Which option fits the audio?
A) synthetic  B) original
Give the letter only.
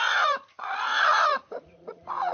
A